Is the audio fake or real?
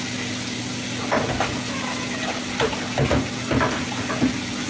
real